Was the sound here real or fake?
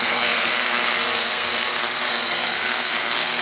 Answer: fake